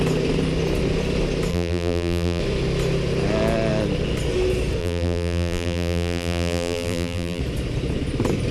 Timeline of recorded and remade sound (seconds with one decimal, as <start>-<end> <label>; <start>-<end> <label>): 0.0-1.5 recorded; 1.5-2.4 remade; 2.4-4.8 recorded; 4.8-7.4 remade; 7.4-8.5 recorded

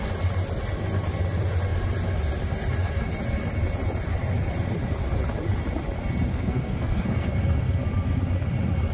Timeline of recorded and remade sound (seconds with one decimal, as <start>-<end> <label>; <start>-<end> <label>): 0.0-6.3 recorded; 6.3-7.4 remade; 7.4-8.9 recorded